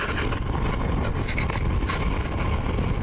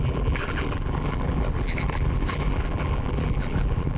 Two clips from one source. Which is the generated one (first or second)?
second